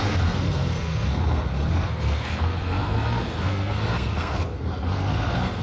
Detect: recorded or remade remade